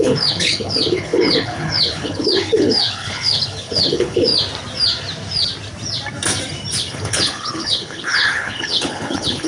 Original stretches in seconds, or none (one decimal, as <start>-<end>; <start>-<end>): 4.3-6.9